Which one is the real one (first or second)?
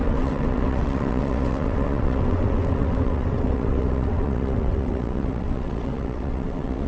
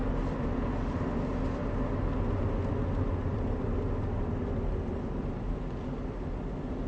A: second